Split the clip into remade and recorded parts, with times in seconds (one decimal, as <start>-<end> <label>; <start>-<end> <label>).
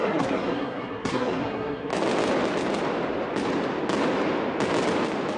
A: 0.0-1.9 remade; 1.9-5.4 recorded